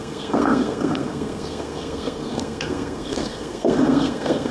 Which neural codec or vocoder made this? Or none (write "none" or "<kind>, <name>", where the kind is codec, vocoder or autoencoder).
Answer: codec, SNAC